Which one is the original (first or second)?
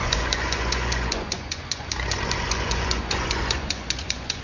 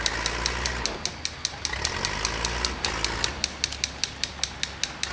second